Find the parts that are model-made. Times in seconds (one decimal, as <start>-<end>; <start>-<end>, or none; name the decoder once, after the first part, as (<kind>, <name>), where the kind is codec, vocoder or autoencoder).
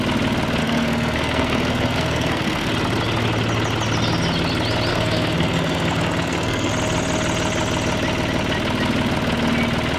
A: 0.6-2.7 (codec, SNAC); 4.9-6.7